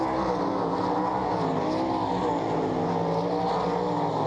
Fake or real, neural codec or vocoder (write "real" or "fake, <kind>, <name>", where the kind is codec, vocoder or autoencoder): real